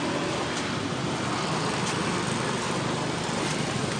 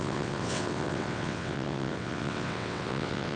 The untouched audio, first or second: first